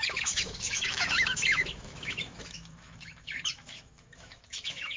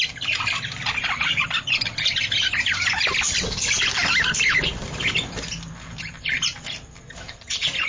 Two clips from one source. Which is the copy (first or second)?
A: first